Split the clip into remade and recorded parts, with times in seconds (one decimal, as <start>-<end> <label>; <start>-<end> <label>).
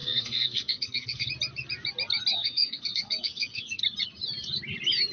0.0-1.3 remade; 1.3-2.3 recorded; 2.3-3.8 remade; 3.8-5.1 recorded